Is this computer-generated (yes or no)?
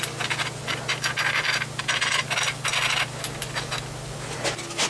no